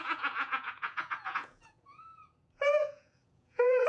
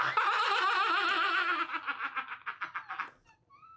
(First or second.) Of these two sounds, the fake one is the first